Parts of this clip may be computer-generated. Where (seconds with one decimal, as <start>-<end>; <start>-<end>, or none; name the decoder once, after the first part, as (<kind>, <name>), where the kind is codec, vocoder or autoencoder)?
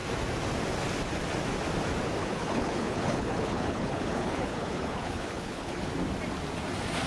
2.2-5.9 (codec, HILCodec)